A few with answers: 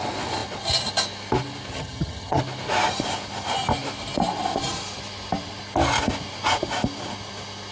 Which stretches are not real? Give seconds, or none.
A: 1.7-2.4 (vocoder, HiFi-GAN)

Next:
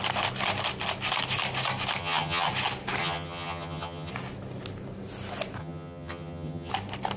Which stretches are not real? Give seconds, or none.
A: 2.0-2.5 (vocoder, HiFi-GAN); 3.0-4.1; 5.6-6.7

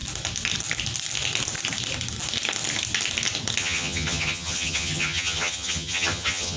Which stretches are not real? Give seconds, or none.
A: 3.6-6.6 (vocoder, HiFi-GAN)

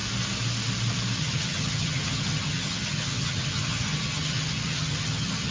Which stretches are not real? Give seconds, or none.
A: 1.2-5.5 (vocoder, HiFi-GAN)